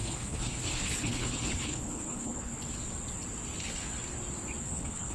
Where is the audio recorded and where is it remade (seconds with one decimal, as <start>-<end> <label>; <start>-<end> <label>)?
0.0-2.5 remade; 2.5-4.6 recorded; 4.6-5.1 remade